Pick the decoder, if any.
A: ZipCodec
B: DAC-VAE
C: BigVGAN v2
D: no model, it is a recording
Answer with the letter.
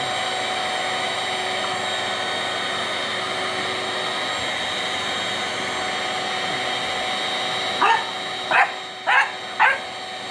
D